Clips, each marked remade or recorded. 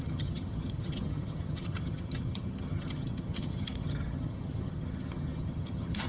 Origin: remade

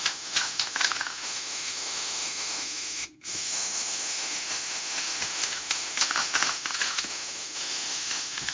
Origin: remade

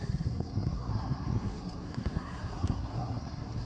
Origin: remade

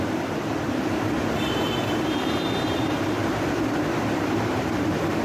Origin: remade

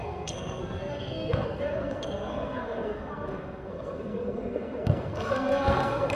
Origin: remade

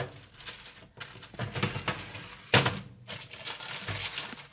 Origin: recorded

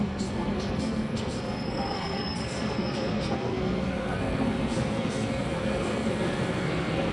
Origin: remade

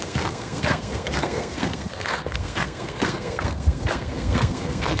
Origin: remade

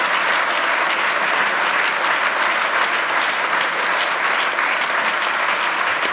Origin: recorded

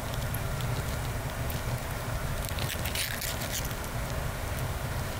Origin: recorded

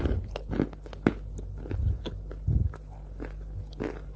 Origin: recorded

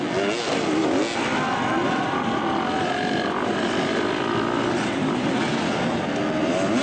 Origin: recorded